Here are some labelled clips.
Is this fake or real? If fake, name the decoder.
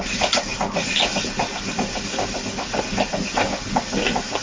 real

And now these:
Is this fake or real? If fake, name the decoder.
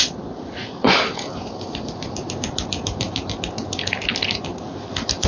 real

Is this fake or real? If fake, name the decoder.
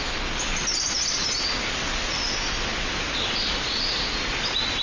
real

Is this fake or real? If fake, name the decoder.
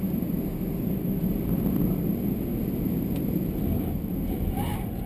real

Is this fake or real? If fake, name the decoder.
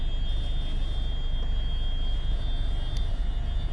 real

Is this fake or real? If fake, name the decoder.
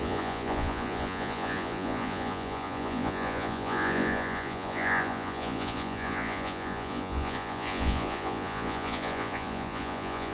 fake, vocoder, Vocos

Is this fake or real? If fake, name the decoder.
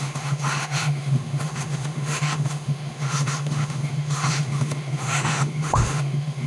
fake, autoencoder, DAC-VAE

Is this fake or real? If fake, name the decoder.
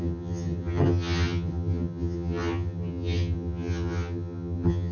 fake, vocoder, HiFi-GAN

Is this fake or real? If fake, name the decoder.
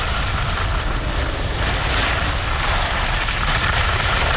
real